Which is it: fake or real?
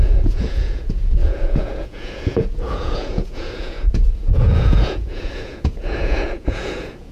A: fake